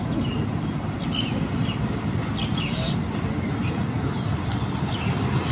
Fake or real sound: real